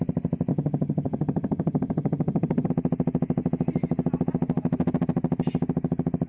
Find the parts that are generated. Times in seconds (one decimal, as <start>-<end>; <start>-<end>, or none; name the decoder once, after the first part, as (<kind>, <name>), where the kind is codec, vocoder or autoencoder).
0.5-2.7 (vocoder, HiFi-GAN)